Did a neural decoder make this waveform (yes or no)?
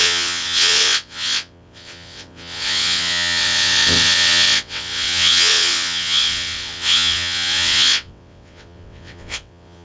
yes